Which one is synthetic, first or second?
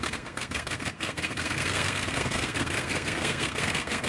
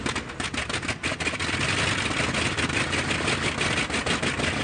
first